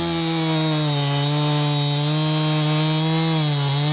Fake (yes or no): no